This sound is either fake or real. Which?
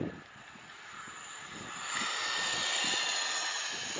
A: real